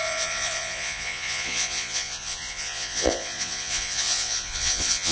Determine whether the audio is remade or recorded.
remade